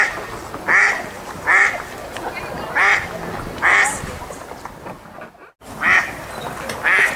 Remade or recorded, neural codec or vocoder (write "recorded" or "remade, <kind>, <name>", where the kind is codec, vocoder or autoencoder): recorded